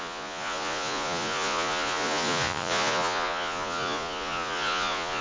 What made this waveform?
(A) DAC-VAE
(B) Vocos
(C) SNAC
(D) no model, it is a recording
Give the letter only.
B